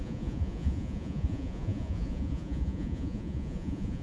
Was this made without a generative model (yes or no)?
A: no